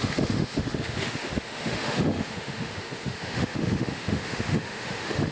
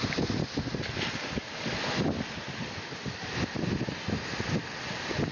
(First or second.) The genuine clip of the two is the second